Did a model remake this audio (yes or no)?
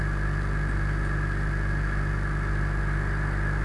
no